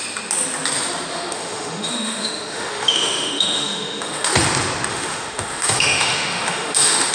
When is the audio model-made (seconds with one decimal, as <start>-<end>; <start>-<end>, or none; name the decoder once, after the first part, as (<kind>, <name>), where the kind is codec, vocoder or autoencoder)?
1.1-4.3 (autoencoder, DAC-VAE); 4.9-7.1